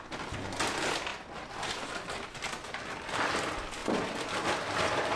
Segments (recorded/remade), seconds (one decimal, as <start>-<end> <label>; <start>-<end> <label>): 0.0-5.2 recorded